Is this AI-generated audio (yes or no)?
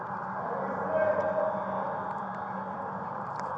no